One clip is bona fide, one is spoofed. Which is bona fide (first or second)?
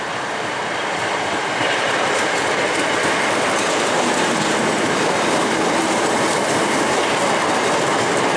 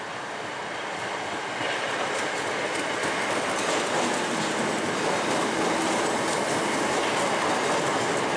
second